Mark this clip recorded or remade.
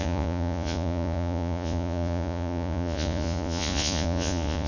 remade